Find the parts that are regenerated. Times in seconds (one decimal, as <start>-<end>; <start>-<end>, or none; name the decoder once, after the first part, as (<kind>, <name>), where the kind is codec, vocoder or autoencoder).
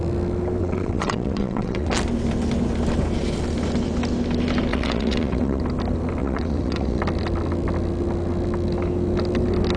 0.6-1.9 (vocoder, WaveNeXt); 4.7-5.6; 6.2-7.0